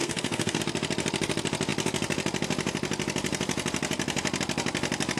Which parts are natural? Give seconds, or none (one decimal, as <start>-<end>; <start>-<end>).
0.6-5.2